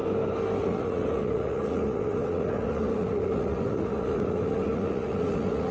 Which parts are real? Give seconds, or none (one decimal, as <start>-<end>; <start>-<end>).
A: 0.0-0.6